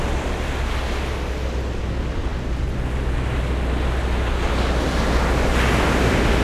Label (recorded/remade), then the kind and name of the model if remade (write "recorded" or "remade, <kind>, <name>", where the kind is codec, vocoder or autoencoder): recorded